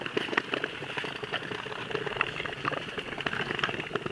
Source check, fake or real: real